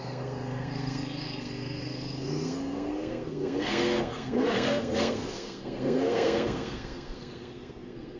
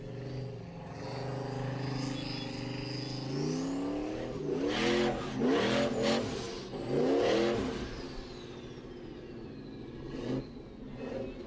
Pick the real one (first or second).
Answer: second